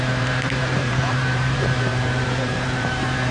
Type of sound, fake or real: fake